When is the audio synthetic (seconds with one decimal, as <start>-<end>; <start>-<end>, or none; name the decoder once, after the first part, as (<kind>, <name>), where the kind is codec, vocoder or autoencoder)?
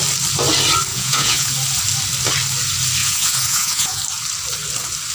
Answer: 0.9-1.5 (vocoder, Vocos); 3.0-4.0